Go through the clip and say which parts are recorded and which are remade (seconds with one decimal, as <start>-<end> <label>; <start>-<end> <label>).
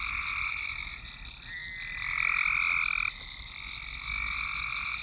0.0-5.0 recorded